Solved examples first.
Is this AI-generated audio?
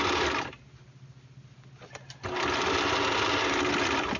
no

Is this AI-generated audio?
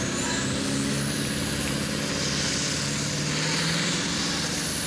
no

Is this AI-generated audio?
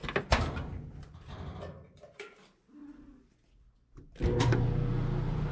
no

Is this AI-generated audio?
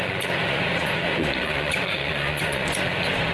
yes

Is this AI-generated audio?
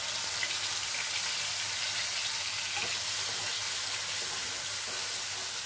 no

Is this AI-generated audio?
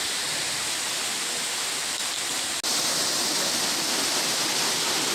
no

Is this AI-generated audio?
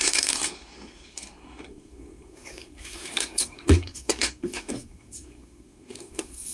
yes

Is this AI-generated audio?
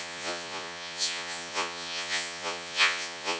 yes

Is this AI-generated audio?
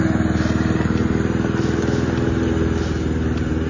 no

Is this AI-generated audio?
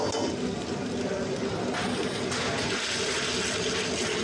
no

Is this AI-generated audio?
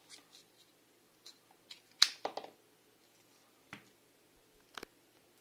no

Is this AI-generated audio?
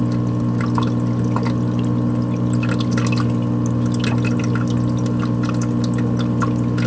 no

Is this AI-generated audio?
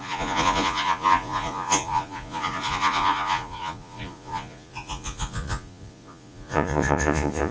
yes